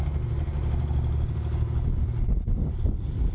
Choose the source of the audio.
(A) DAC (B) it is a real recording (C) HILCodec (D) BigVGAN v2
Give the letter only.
B